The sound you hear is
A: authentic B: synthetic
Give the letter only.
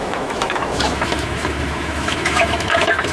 B